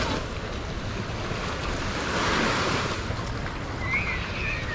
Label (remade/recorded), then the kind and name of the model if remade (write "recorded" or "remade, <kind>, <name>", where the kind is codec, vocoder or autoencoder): recorded